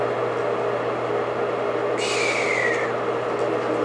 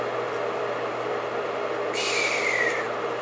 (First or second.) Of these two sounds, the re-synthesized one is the second